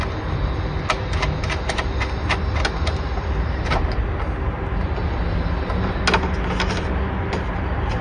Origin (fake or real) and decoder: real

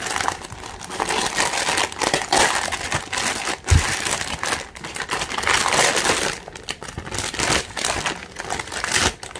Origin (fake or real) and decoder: real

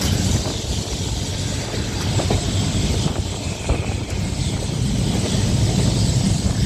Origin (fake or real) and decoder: real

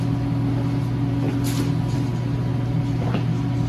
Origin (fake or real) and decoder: real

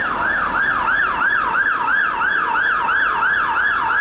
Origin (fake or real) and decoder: real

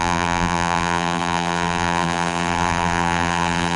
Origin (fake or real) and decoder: fake, vocoder, BigVGAN v2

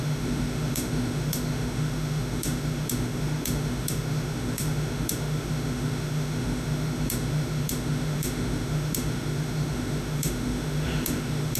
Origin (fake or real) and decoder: fake, autoencoder, DAC-VAE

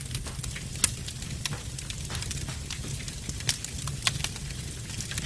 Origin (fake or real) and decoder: real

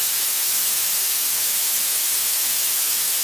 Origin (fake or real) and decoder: fake, autoencoder, DAC-VAE